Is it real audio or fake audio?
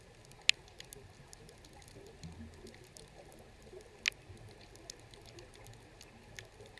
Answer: real